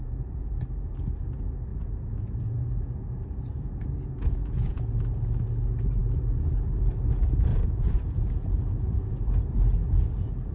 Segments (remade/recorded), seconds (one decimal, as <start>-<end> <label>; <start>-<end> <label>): 0.0-0.6 remade; 0.6-1.7 recorded; 1.7-4.8 remade; 4.8-7.5 recorded; 7.5-9.4 remade; 9.4-10.5 recorded